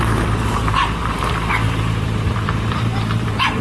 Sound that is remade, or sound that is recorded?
remade